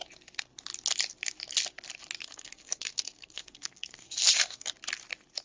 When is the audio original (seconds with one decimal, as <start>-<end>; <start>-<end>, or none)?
0.0-2.2; 4.7-5.4